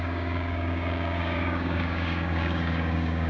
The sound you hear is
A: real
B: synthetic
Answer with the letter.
B